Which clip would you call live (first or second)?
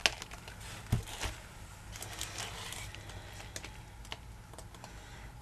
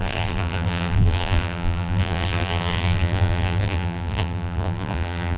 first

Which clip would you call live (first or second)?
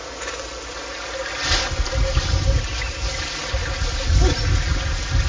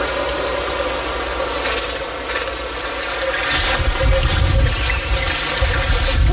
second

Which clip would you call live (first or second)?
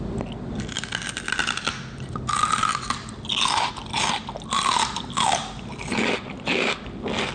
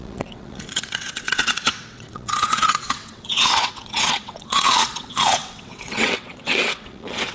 first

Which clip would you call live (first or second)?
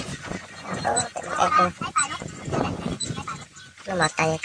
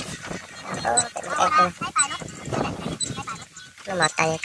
second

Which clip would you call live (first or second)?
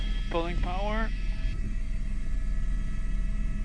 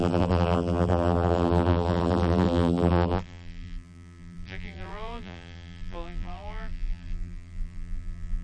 first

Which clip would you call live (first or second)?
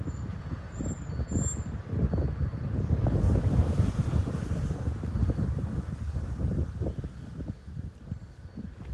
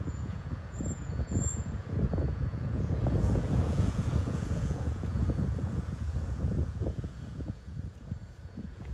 first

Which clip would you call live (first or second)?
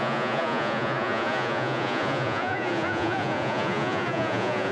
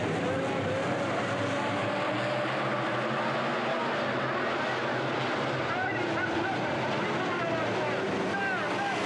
second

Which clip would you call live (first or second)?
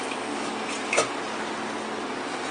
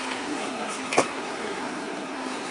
first